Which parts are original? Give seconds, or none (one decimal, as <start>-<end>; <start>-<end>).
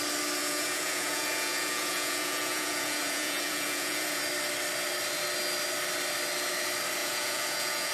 0.0-0.4; 4.2-7.0